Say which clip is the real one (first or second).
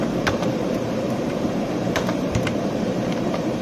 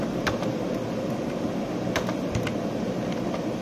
second